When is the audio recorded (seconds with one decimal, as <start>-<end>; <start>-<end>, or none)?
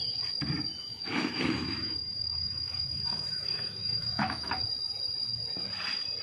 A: 0.0-0.8; 4.5-6.2